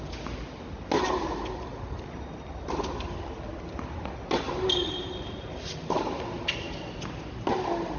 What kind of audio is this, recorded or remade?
recorded